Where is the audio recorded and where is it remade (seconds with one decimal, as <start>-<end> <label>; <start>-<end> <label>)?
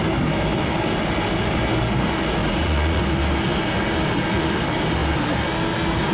0.0-2.4 recorded; 2.4-3.0 remade; 3.0-6.1 recorded